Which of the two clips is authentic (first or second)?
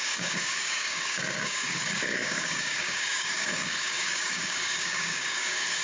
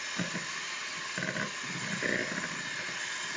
second